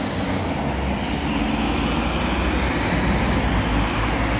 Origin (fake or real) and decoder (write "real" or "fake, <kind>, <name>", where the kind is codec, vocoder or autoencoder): real